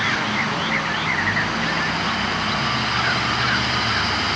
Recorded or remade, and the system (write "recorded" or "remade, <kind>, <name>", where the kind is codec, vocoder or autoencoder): recorded